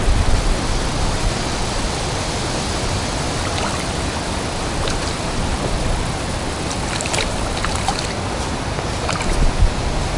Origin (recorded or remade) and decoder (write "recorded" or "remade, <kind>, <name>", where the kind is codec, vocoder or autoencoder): recorded